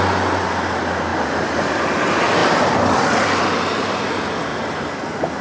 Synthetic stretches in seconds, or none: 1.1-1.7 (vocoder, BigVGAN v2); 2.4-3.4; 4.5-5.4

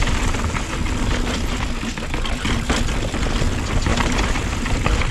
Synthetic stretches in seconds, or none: 3.9-5.1 (vocoder, BigVGAN v2)

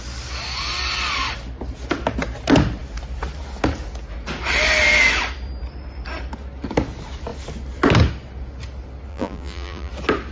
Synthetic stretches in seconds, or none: 9.1-9.9 (vocoder, BigVGAN v2)

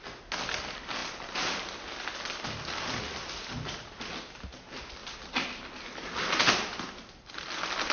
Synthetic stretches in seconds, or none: none

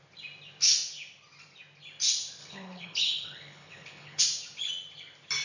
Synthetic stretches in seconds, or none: 2.4-4.2 (codec, HILCodec)

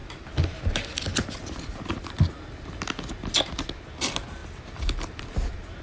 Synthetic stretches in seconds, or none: none

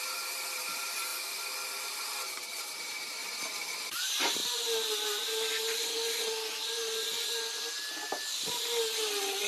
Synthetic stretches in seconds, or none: 0.0-1.1 (vocoder, BigVGAN v2); 1.8-3.2; 3.8-4.4